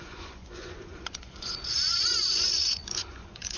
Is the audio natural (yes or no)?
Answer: no